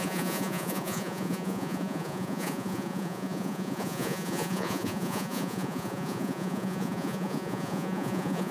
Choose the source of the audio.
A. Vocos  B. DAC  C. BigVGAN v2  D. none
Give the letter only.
A